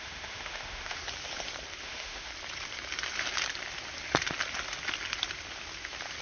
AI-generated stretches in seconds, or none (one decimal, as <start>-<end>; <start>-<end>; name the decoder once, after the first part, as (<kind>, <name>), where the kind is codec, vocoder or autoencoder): 0.0-1.0 (autoencoder, DAC-VAE); 1.8-2.3